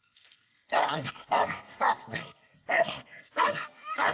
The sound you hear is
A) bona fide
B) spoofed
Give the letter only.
B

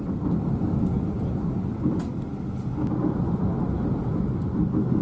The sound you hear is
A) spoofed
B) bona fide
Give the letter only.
B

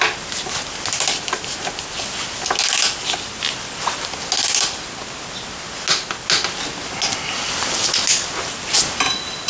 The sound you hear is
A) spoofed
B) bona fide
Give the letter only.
B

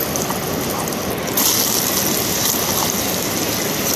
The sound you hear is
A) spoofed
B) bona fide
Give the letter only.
B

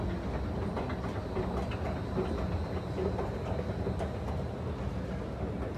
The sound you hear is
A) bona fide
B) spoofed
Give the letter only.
A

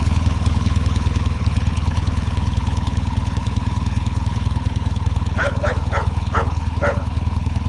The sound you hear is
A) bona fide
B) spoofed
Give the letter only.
B